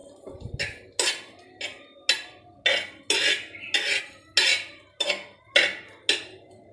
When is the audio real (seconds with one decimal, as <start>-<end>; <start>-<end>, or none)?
0.0-6.7